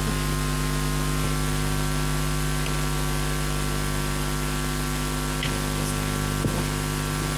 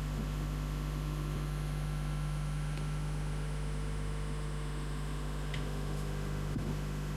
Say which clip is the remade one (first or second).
second